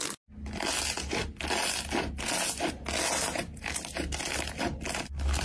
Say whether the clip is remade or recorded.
recorded